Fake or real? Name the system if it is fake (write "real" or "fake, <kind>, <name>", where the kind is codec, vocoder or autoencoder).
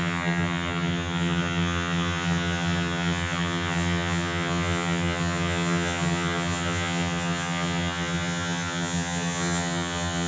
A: fake, vocoder, HiFi-GAN